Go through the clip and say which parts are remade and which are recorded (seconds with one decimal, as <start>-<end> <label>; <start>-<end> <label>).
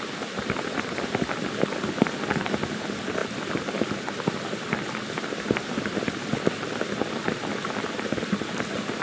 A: 0.0-9.0 recorded